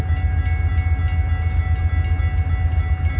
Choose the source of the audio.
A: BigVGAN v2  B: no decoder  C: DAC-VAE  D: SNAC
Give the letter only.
B